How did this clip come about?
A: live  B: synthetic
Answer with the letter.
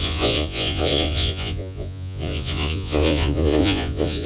B